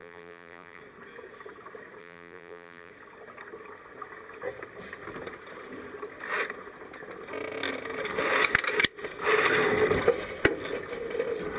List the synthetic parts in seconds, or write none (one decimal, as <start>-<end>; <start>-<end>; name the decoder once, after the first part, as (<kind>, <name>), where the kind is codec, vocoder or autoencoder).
0.0-0.8 (vocoder, BigVGAN v2); 2.0-2.9